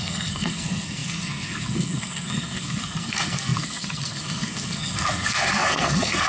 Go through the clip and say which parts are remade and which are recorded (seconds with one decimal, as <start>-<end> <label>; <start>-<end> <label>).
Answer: 0.0-6.3 remade